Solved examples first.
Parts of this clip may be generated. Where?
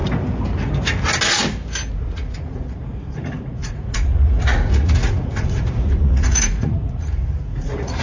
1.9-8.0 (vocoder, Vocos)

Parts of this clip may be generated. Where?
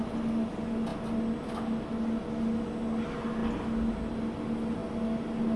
none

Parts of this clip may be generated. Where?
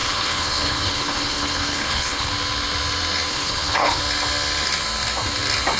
0.0-2.3 (codec, HILCodec); 3.3-4.0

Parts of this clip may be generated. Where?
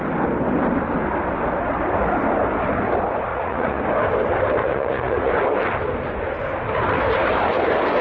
3.3-3.8 (vocoder, Vocos); 4.6-5.3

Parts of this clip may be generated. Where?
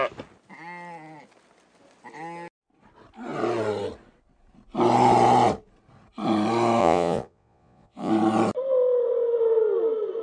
6.8-8.1 (vocoder, Vocos)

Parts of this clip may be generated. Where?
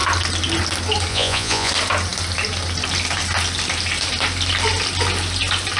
1.1-1.7 (vocoder, Vocos)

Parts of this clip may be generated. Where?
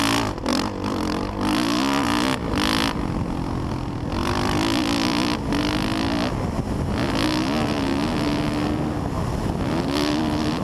0.5-1.3 (vocoder, BigVGAN v2); 4.2-5.5